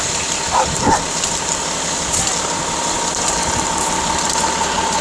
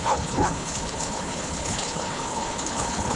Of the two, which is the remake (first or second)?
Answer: second